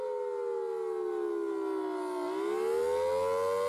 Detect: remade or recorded recorded